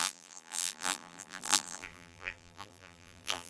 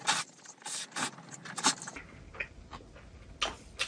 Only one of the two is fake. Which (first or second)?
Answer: first